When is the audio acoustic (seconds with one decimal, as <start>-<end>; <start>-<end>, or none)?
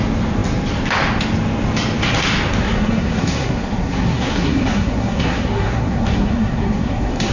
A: 0.0-2.6